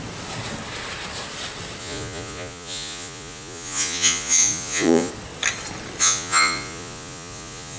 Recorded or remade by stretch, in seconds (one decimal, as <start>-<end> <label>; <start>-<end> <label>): 0.0-1.8 recorded; 1.8-5.1 remade; 5.1-6.0 recorded; 6.0-7.8 remade